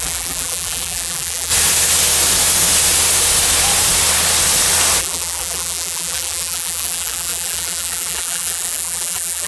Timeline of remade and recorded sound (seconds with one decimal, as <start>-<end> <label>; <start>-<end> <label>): 0.0-1.5 remade; 1.5-5.0 recorded; 5.0-9.5 remade